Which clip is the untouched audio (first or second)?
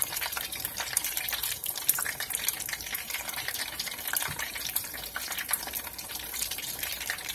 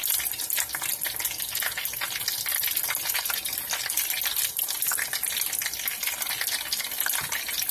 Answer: second